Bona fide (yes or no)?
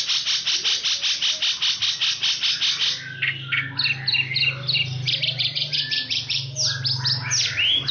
yes